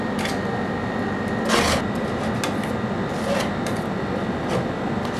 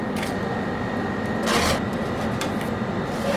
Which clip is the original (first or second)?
first